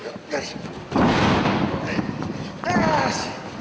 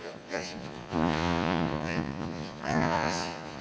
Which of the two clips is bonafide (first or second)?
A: first